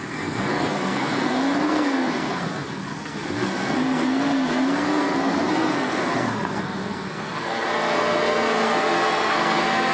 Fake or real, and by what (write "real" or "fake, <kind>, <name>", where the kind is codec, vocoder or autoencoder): fake, codec, SNAC